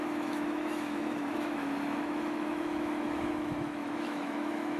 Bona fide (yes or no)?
no